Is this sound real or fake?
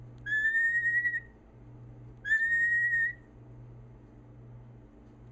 real